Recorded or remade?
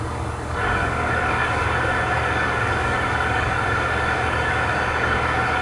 remade